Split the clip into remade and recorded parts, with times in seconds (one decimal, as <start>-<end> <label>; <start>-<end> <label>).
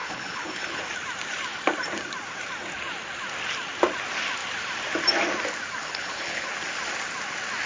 0.0-0.8 remade; 0.8-5.8 recorded; 5.8-6.5 remade; 6.5-7.7 recorded